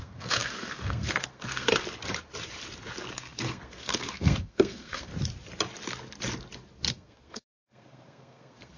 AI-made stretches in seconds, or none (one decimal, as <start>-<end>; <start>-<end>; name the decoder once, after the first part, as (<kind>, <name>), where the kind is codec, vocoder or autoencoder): 0.0-1.7 (codec, SNAC); 3.1-5.1; 6.9-8.8